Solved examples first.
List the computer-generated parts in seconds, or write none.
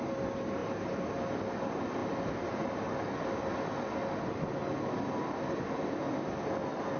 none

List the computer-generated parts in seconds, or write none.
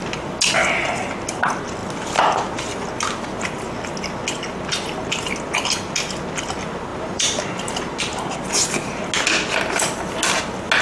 6.9-8.0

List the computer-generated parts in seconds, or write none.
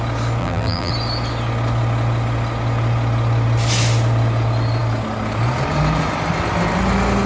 0.4-0.9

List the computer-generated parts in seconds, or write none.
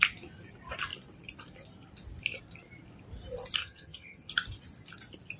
3.6-4.3